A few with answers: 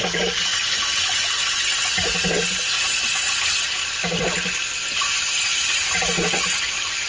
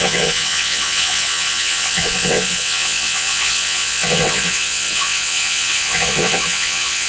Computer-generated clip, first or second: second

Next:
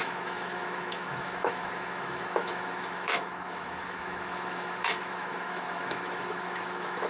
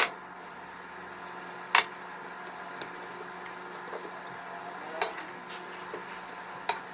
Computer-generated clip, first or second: first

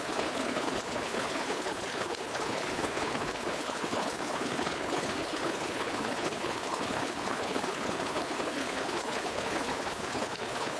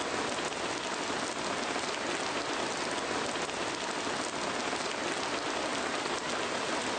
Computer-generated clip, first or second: first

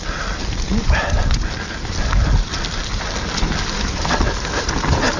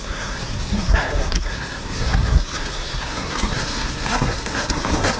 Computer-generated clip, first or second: second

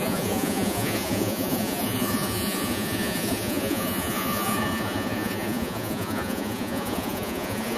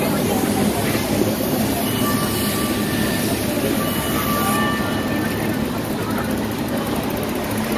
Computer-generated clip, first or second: first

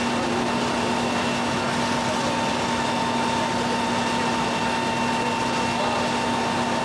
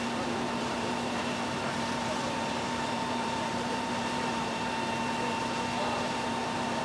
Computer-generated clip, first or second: second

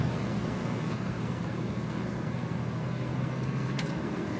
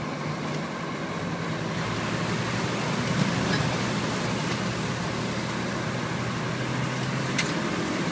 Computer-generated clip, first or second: first